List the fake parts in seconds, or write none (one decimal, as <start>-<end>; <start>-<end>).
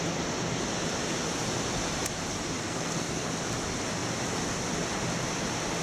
2.6-3.3